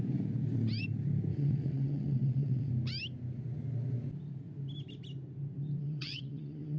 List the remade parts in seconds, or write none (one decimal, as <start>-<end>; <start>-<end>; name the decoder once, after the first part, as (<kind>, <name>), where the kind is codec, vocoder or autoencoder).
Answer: 1.3-2.7 (vocoder, WaveNeXt); 5.8-6.8